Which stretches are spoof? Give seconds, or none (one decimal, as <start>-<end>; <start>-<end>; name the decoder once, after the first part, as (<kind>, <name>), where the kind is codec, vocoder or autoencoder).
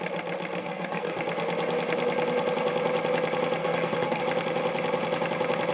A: 0.6-1.2 (codec, SNAC); 3.6-4.2